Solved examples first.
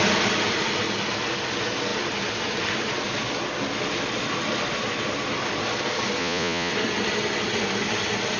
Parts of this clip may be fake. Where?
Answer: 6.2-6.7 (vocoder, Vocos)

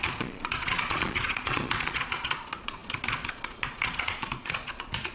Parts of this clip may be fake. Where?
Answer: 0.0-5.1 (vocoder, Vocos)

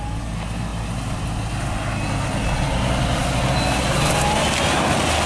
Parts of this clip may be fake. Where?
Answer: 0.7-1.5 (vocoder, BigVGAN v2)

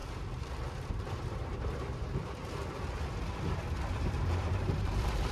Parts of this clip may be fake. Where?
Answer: 0.9-2.4 (vocoder, BigVGAN v2); 3.9-5.3

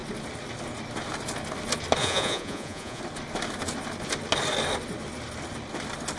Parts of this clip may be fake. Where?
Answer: 2.0-3.0 (vocoder, Vocos)

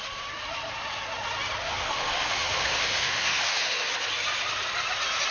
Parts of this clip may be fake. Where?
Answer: 1.6-3.9 (autoencoder, DAC-VAE)